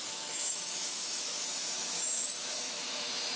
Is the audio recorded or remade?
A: remade